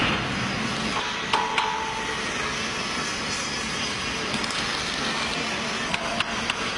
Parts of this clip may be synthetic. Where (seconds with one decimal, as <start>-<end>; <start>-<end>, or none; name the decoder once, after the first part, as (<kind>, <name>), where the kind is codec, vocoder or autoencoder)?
3.1-3.8 (vocoder, BigVGAN v2)